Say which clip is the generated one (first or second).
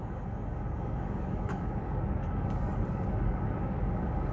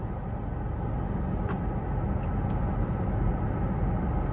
first